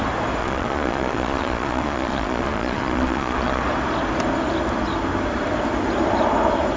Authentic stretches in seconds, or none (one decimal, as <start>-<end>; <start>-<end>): 0.0-0.4; 3.6-6.8

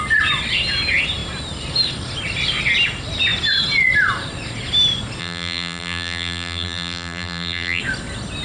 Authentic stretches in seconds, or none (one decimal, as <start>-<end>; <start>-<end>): 0.0-5.2; 7.8-8.4

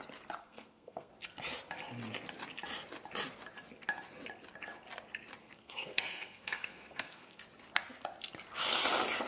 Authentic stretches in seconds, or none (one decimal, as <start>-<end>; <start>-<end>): 0.0-0.4; 1.1-5.4; 7.4-9.3

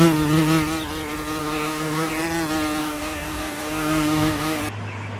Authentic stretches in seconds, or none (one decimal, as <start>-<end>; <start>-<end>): 0.0-1.4; 2.1-2.8; 4.6-5.2